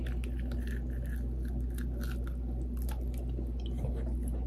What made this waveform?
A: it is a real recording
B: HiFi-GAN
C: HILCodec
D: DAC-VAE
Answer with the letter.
A